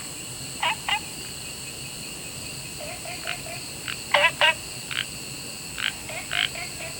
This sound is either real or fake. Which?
real